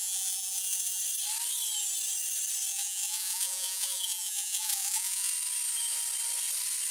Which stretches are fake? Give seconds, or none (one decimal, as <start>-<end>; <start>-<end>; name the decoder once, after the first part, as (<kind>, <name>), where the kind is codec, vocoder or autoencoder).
0.0-1.0 (vocoder, Vocos); 2.7-5.3